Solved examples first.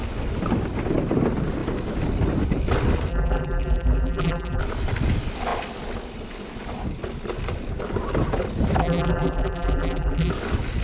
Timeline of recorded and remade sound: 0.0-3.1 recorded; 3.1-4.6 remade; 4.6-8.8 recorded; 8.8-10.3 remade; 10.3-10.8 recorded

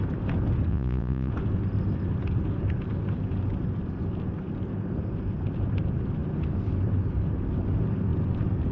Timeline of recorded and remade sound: 0.0-0.7 recorded; 0.7-1.3 remade; 1.3-8.7 recorded

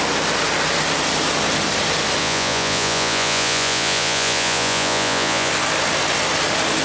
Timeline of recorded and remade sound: 0.0-2.2 recorded; 2.2-5.5 remade; 5.5-6.8 recorded

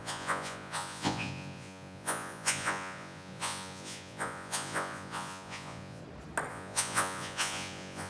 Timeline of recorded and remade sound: 0.0-6.0 remade; 6.0-6.5 recorded; 6.5-8.1 remade

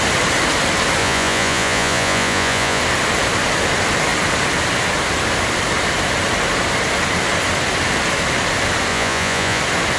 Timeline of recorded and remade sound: 0.0-1.0 recorded; 1.0-2.8 remade; 2.8-8.9 recorded; 8.9-9.6 remade; 9.6-10.0 recorded